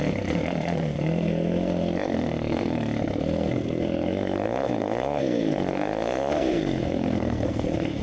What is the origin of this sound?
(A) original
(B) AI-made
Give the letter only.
B